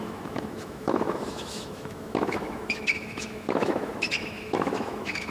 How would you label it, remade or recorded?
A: remade